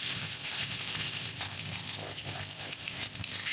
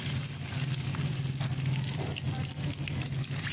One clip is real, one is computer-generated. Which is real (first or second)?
second